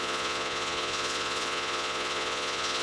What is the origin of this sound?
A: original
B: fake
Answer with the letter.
B